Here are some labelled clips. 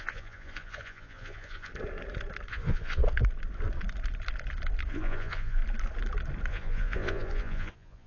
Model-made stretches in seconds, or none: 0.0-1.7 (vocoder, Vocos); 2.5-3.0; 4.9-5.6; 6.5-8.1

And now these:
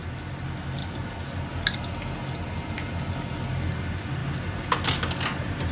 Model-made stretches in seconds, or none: none